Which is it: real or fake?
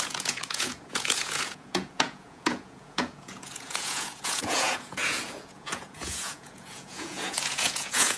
fake